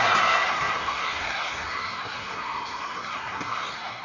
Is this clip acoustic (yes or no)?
no